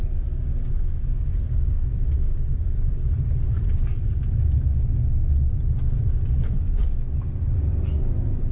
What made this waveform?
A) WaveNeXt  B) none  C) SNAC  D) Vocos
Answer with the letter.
B